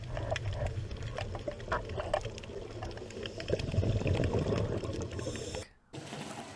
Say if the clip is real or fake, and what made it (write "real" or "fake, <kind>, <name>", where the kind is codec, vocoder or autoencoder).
real